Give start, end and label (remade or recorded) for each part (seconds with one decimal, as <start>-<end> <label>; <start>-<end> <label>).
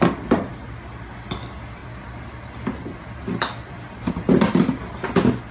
0.0-0.5 recorded; 0.5-1.0 remade; 1.0-5.5 recorded